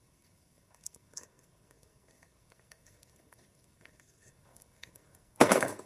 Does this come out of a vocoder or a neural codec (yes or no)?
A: yes